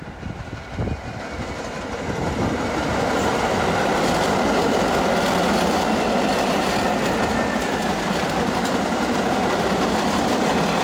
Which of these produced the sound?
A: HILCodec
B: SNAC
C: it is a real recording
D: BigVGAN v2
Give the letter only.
C